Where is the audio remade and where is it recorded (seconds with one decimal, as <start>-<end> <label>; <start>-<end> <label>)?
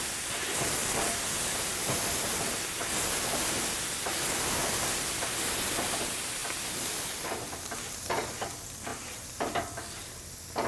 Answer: 0.0-8.9 recorded; 8.9-9.5 remade; 9.5-10.7 recorded